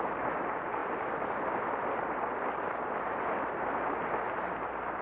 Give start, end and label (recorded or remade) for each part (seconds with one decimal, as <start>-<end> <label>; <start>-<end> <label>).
0.0-5.0 recorded